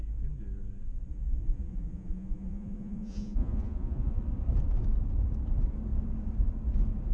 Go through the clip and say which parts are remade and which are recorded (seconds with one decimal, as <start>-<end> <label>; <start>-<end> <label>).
0.0-1.1 recorded; 1.1-4.2 remade; 4.2-7.1 recorded